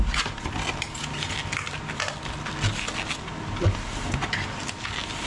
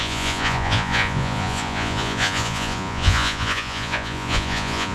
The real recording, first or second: first